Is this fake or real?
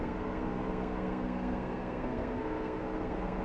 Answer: fake